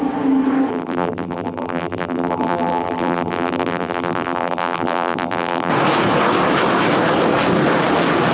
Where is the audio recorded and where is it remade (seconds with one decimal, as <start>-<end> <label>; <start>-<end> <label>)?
0.0-0.7 recorded; 0.7-5.7 remade; 5.7-8.3 recorded